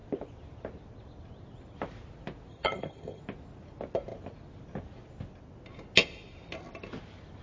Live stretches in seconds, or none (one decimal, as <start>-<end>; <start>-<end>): 0.0-2.5; 3.2-7.4